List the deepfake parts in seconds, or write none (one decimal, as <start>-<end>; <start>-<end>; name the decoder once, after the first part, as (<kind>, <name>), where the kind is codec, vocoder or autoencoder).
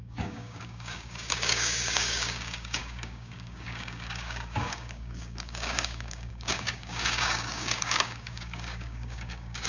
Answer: 0.0-9.7 (codec, DAC)